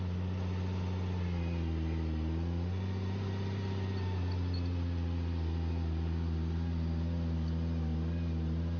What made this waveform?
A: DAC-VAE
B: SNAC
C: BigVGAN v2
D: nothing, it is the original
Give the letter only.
D